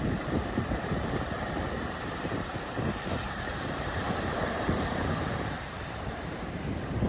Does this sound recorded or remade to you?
remade